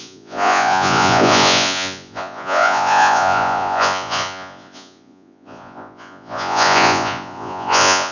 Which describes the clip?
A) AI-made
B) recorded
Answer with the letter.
A